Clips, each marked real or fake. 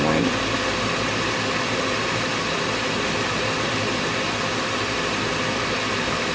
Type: real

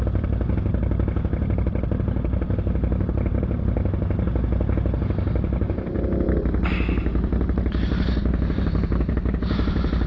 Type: real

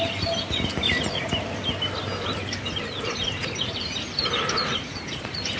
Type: fake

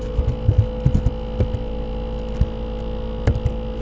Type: real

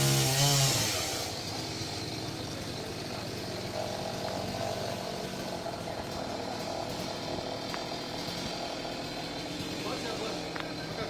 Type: real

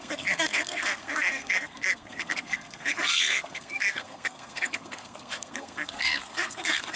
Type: fake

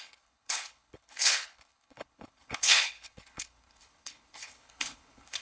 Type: fake